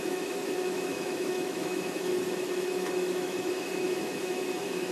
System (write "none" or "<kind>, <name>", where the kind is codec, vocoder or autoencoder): autoencoder, DAC-VAE